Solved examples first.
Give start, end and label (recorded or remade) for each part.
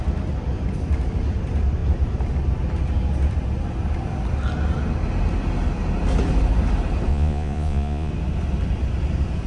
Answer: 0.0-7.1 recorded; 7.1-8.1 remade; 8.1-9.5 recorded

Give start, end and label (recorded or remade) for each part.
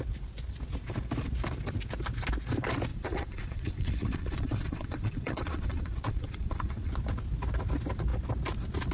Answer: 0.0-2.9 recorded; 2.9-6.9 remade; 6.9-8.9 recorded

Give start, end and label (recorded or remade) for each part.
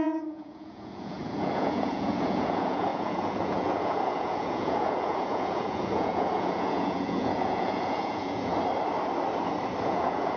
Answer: 0.0-8.5 remade; 8.5-9.8 recorded; 9.8-10.4 remade